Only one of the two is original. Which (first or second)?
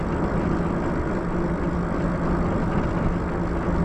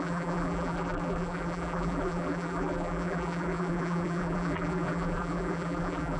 first